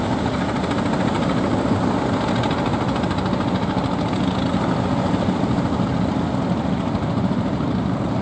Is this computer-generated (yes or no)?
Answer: no